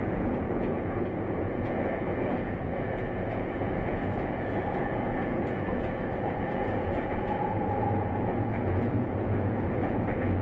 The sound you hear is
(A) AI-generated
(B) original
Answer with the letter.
A